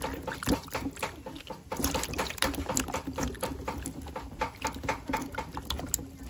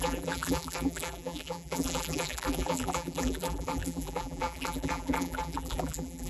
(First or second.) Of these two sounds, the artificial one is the second